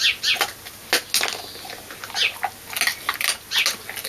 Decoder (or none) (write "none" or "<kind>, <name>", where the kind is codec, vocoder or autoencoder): none